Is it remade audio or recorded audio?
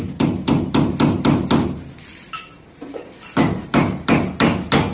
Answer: recorded